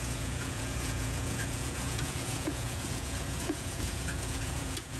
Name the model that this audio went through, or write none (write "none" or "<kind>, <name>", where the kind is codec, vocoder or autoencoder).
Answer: vocoder, Vocos